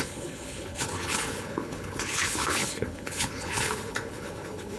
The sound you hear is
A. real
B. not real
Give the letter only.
B